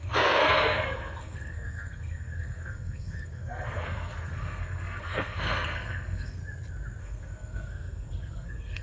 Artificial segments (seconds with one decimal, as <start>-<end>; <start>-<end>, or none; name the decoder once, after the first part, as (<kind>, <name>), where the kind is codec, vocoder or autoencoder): 0.0-6.4 (codec, SNAC); 7.0-8.8